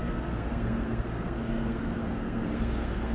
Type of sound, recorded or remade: remade